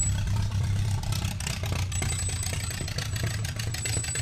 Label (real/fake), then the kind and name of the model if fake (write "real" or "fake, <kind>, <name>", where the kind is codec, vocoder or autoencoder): fake, vocoder, BigVGAN v2